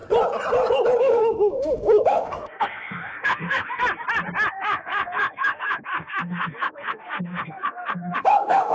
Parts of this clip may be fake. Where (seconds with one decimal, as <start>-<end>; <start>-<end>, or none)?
1.0-3.8; 4.5-8.7